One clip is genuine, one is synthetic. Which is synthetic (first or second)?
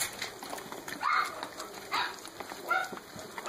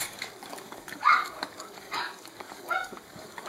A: second